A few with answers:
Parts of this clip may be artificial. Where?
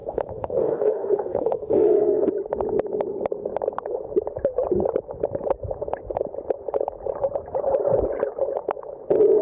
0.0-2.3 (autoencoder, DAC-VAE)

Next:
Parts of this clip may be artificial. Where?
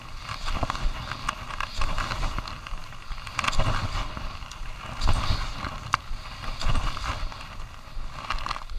none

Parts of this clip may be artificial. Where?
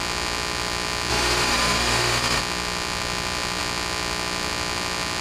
1.1-2.4 (autoencoder, DAC-VAE)